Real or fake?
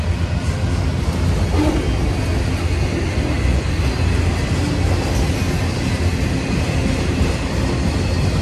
real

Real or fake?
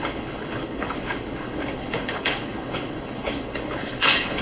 fake